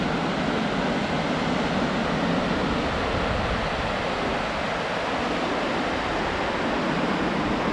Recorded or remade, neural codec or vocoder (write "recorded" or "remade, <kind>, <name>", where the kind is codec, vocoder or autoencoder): recorded